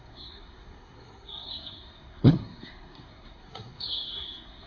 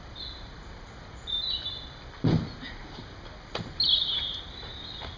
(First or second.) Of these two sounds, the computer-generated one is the first